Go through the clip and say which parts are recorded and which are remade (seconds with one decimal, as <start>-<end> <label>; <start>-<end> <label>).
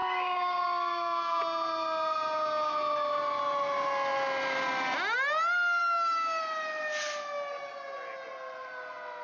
0.0-1.4 remade; 1.4-5.8 recorded; 5.8-6.4 remade; 6.4-9.2 recorded